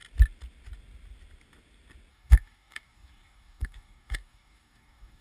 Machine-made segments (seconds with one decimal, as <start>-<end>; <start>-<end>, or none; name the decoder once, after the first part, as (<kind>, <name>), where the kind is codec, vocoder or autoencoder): 2.1-5.2 (codec, DAC)

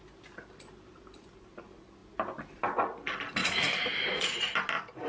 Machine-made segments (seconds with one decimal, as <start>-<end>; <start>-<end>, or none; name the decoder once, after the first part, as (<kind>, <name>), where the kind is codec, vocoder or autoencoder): 3.4-4.5 (vocoder, Vocos)